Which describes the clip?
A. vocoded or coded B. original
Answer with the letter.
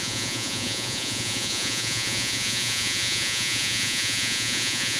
A